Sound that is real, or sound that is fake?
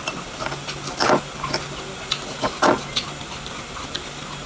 real